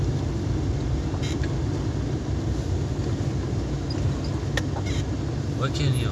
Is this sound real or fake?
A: real